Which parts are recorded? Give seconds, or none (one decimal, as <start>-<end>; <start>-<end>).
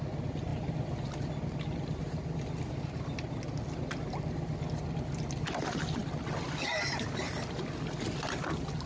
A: 0.0-8.9